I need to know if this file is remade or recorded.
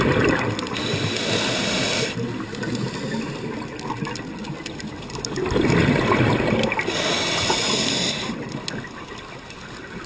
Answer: recorded